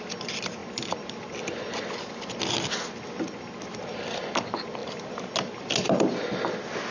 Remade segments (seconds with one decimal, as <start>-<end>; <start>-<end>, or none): 4.8-5.3